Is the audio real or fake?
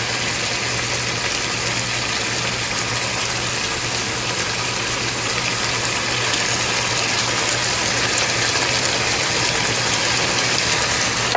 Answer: real